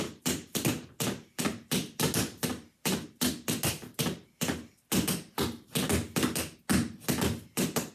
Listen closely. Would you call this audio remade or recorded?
recorded